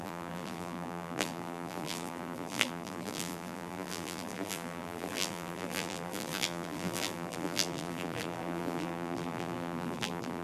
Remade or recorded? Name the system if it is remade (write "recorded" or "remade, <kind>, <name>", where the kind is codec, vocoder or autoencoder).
remade, vocoder, BigVGAN v2